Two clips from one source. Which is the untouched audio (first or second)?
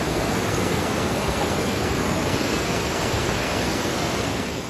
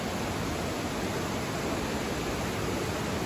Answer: second